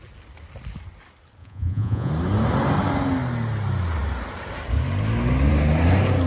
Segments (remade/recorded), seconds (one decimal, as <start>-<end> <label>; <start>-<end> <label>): 0.0-1.4 recorded; 1.4-2.1 remade; 2.1-6.3 recorded

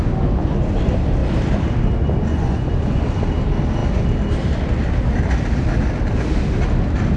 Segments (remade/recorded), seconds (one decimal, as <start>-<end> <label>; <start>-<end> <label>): 0.0-2.3 recorded; 2.3-3.0 remade; 3.0-7.2 recorded

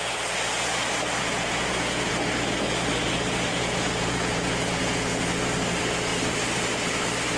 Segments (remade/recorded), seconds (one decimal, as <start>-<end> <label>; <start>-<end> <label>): 0.0-1.2 recorded; 1.2-2.1 remade; 2.1-3.5 recorded; 3.5-5.2 remade; 5.2-7.4 recorded